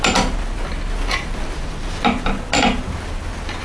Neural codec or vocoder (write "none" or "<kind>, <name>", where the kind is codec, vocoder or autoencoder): none